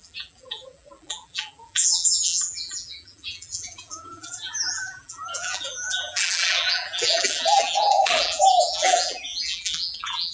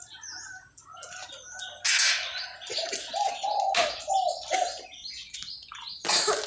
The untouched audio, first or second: second